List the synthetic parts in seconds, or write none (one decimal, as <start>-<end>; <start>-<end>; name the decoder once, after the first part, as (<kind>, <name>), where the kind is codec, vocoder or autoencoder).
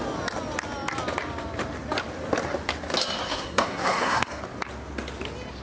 3.3-4.4 (codec, SNAC)